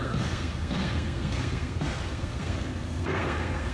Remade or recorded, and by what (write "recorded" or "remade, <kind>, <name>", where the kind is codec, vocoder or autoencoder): remade, codec, SNAC